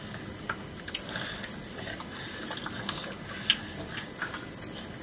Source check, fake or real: real